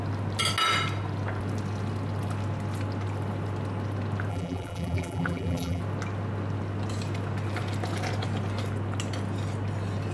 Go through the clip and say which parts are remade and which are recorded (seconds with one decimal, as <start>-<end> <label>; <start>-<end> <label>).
0.0-4.3 recorded; 4.3-5.8 remade; 5.8-10.1 recorded